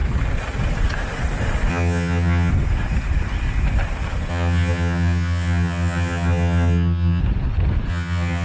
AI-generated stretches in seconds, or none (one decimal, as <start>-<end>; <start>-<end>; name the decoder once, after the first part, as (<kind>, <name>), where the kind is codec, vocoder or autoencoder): 1.7-2.5 (vocoder, HiFi-GAN); 4.3-7.2; 7.9-8.4